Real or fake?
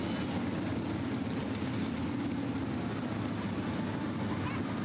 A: real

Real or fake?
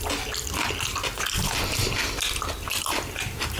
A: real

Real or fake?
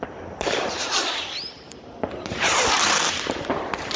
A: fake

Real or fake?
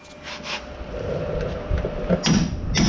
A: real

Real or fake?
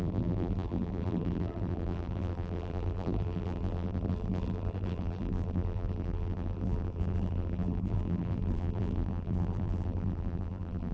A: fake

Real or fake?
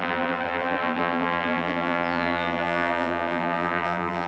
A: fake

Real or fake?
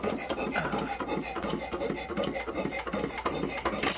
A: real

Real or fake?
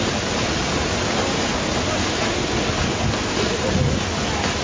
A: real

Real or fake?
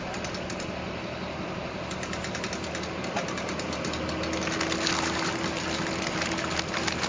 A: real